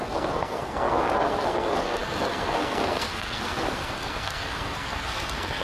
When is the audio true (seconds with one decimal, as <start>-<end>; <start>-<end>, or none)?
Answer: none